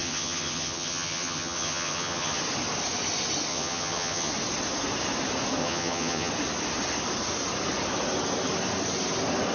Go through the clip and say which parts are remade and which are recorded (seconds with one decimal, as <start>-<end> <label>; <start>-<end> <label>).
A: 0.0-2.4 remade; 2.4-3.5 recorded; 3.5-4.3 remade; 4.3-5.6 recorded; 5.6-6.3 remade; 6.3-9.5 recorded